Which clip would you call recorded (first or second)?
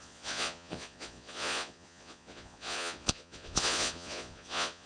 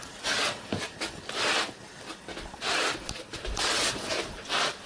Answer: second